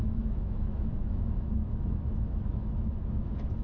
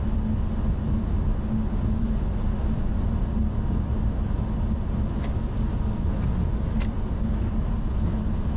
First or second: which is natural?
second